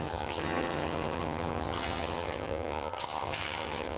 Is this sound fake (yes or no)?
yes